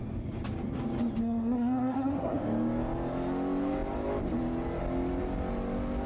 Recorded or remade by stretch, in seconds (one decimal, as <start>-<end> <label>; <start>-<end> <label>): 0.0-1.2 recorded; 1.2-2.4 remade; 2.4-6.1 recorded